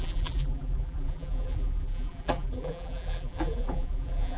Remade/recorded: remade